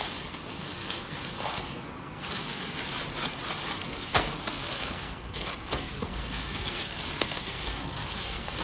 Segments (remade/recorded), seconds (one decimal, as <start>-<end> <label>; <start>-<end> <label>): 0.0-2.8 remade; 2.8-3.7 recorded; 3.7-8.6 remade